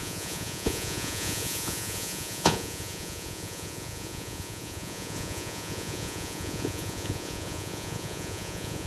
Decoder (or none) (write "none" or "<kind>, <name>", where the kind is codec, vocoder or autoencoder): vocoder, Vocos